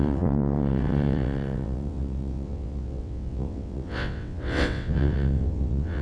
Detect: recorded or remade remade